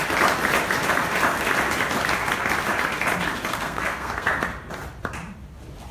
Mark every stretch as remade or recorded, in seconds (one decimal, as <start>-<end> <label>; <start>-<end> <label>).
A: 0.0-3.5 recorded; 3.5-4.3 remade; 4.3-5.9 recorded